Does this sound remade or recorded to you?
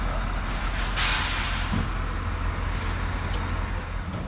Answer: recorded